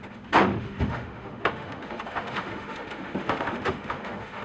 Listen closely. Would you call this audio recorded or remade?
remade